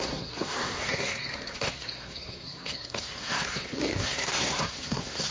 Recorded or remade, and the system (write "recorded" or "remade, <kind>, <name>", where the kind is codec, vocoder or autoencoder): remade, codec, SNAC